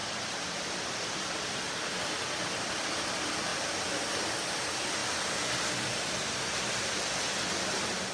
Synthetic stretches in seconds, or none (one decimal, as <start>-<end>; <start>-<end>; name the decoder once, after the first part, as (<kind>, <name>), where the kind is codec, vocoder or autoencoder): 0.0-2.7 (vocoder, BigVGAN v2)